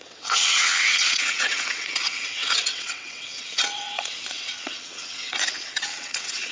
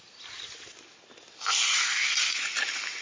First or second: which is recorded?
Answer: second